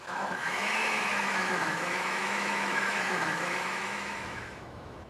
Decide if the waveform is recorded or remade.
remade